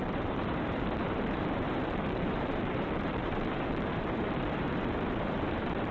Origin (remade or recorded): remade